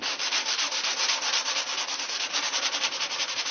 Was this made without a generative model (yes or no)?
no